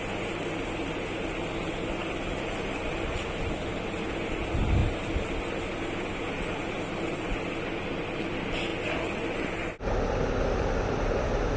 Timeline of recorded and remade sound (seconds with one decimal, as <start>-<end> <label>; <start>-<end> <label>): 0.0-11.6 recorded

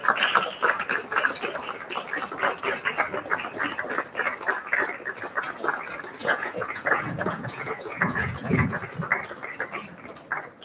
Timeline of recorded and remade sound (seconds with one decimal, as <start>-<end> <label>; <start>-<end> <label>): 0.0-6.2 recorded; 6.2-8.8 remade; 8.8-10.6 recorded